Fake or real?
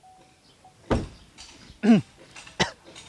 real